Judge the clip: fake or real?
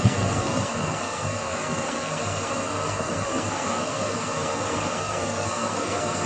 fake